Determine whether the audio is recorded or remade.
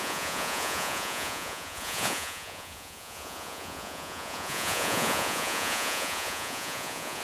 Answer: remade